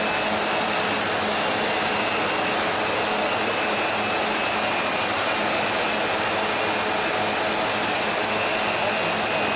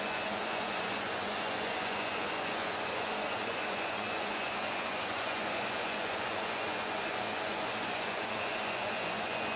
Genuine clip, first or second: first